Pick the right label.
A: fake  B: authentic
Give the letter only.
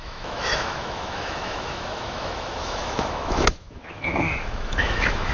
A